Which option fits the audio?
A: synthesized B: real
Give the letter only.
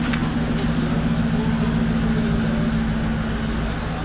B